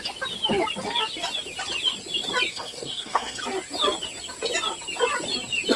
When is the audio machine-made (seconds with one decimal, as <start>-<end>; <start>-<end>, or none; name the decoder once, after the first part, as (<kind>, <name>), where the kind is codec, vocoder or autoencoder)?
2.5-3.4 (codec, SNAC)